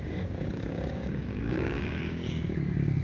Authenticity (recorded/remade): remade